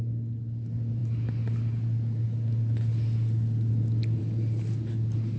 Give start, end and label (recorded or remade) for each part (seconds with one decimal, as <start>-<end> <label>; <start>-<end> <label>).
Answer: 0.0-5.4 recorded